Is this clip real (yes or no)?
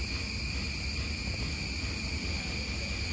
yes